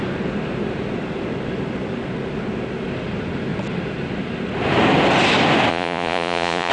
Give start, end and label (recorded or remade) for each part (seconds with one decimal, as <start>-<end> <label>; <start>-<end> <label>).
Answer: 0.0-5.7 recorded; 5.7-6.7 remade

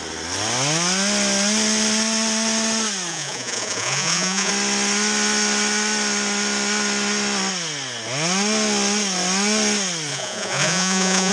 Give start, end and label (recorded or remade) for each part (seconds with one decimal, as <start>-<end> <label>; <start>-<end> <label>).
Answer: 0.0-3.1 recorded; 3.1-4.5 remade; 4.5-10.1 recorded; 10.1-11.3 remade

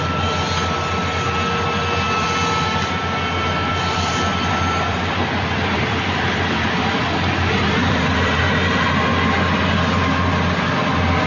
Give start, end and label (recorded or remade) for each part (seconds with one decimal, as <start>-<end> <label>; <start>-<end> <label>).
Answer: 0.0-3.7 recorded; 3.7-4.5 remade; 4.5-4.9 recorded; 4.9-8.4 remade; 8.4-11.3 recorded

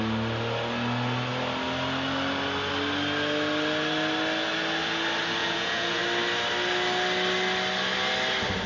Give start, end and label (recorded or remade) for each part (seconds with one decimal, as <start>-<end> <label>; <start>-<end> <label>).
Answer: 0.0-5.4 recorded; 5.4-6.0 remade; 6.0-8.7 recorded

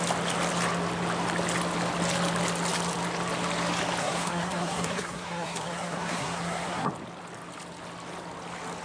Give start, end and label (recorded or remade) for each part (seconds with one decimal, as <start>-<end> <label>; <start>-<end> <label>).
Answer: 0.0-4.0 recorded; 4.0-6.9 remade; 6.9-8.8 recorded

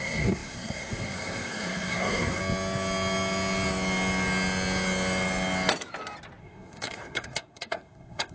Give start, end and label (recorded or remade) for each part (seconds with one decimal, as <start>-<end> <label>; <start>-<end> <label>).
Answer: 0.0-2.4 remade; 2.4-6.4 recorded; 6.4-8.3 remade

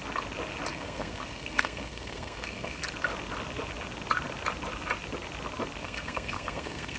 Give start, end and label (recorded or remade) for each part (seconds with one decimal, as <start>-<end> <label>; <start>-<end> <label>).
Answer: 0.0-0.7 recorded; 0.7-2.8 remade; 2.8-5.8 recorded; 5.8-7.0 remade